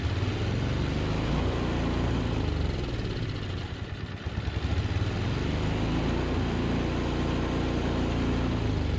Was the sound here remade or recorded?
recorded